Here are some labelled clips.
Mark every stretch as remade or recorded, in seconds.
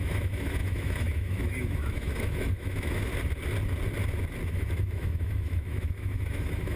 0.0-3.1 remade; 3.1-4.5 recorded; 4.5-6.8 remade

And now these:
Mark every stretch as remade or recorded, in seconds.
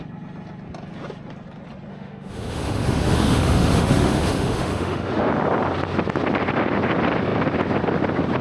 0.0-1.9 recorded; 1.9-5.3 remade; 5.3-8.4 recorded